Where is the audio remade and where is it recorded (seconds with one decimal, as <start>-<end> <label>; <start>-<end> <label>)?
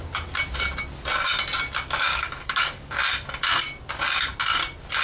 0.0-2.1 recorded; 2.1-2.9 remade; 2.9-5.0 recorded